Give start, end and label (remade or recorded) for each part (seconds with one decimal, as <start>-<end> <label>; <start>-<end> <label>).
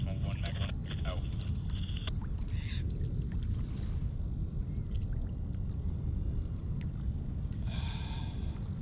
0.0-8.8 recorded